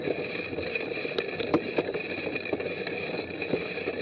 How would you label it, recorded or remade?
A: recorded